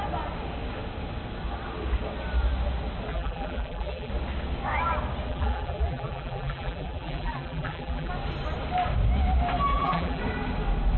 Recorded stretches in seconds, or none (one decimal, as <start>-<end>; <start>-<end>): 0.0-3.1; 4.1-5.3; 8.1-9.7; 10.2-11.0